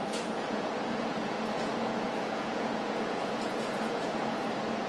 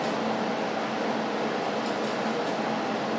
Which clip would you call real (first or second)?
second